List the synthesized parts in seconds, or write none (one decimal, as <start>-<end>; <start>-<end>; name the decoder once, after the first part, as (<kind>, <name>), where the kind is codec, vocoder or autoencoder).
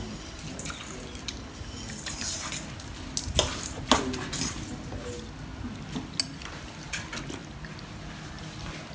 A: none